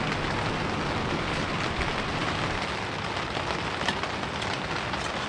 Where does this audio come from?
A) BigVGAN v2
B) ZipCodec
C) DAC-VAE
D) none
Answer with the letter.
D